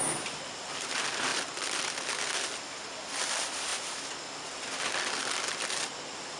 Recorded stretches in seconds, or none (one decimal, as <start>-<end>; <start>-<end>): 0.0-6.4